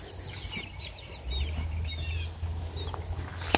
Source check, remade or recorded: recorded